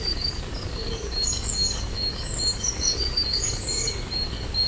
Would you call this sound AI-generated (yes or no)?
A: yes